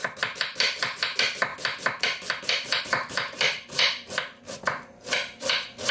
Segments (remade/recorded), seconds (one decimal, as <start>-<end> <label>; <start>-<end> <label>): 0.0-5.9 recorded